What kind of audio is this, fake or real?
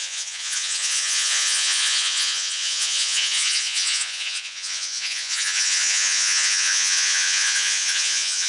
fake